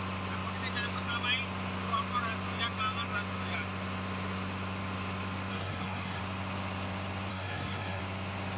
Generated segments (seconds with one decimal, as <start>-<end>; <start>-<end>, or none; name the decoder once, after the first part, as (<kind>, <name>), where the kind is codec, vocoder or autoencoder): 5.5-6.2 (codec, SNAC); 7.3-8.0